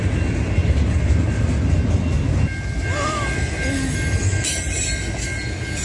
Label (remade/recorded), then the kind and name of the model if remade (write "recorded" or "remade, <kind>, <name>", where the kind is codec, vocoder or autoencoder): recorded